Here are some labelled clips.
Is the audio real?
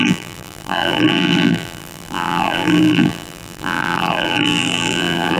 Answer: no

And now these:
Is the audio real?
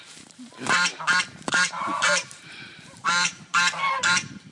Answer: no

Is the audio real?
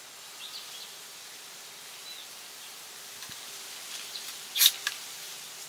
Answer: yes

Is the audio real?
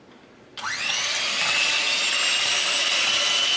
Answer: yes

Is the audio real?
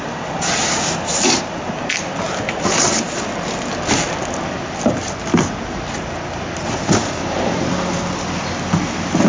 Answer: yes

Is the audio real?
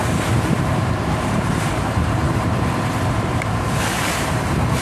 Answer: no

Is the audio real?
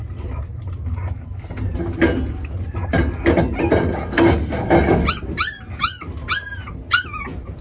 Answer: yes